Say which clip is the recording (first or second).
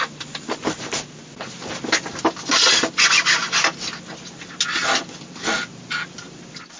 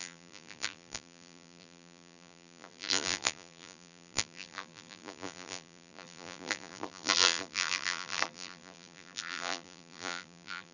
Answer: first